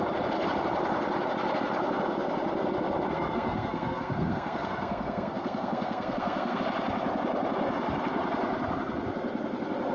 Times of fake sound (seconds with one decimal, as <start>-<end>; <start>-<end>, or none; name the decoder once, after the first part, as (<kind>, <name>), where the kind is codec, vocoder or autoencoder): 3.1-6.6 (codec, SNAC)

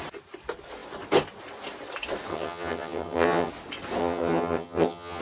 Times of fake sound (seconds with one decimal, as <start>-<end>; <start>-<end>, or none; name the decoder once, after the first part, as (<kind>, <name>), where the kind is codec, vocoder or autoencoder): 2.3-3.5 (vocoder, HiFi-GAN); 4.0-5.2

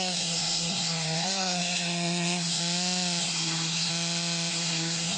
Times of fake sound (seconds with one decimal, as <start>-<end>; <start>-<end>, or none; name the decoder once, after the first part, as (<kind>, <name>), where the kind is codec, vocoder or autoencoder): 0.0-2.6 (codec, SNAC); 3.2-3.9; 4.5-5.2

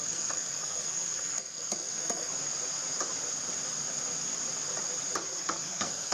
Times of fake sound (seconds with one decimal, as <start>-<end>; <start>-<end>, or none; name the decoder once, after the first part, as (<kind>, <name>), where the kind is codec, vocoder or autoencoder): 0.0-2.3 (codec, SNAC); 5.2-6.1

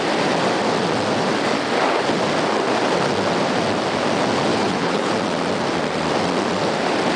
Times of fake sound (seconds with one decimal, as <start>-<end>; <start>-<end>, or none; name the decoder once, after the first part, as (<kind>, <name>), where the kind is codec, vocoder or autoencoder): 4.5-5.1 (codec, HILCodec)

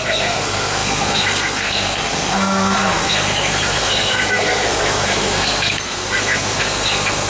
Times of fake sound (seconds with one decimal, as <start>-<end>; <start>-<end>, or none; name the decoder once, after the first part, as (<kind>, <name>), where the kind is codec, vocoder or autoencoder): 0.0-7.3 (codec, SNAC)

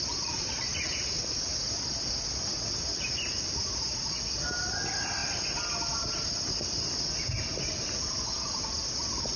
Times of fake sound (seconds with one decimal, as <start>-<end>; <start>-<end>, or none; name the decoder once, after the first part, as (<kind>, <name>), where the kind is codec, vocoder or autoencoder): none

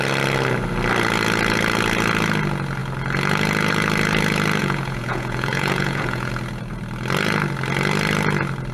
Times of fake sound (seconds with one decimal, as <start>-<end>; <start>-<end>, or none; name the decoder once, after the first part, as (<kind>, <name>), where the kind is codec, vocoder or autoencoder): 4.6-6.3 (vocoder, Vocos)